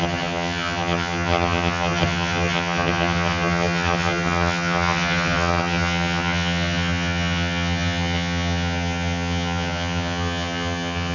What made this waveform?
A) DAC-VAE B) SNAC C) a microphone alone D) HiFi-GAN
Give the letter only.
D